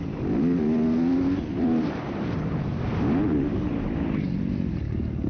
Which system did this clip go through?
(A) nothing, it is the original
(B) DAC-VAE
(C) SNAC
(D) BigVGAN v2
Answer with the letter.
D